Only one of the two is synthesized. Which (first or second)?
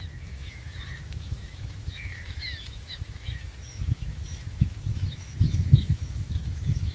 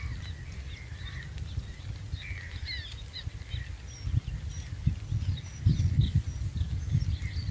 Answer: first